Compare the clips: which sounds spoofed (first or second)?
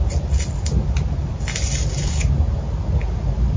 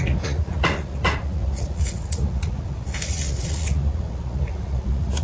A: second